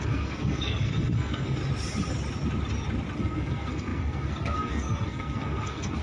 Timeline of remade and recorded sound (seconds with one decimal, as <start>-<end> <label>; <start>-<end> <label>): 0.0-1.6 remade; 1.6-3.2 recorded; 3.2-6.0 remade